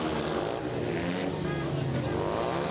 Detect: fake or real real